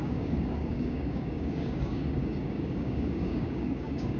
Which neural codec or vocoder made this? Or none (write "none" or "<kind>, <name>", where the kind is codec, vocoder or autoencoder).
codec, DAC